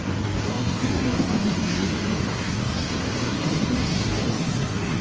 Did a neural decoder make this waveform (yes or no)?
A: yes